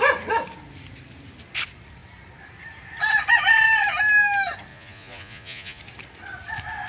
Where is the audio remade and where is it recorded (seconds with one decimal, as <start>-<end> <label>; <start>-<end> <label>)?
0.0-4.7 recorded; 4.7-5.8 remade; 5.8-6.9 recorded